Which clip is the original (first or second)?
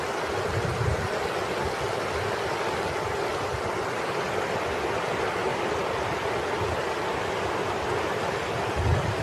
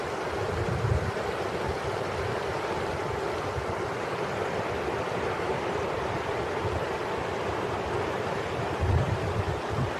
first